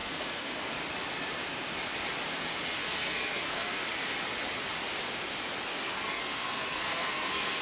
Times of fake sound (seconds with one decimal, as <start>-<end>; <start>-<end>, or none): 0.0-0.7; 2.8-3.8; 5.7-7.6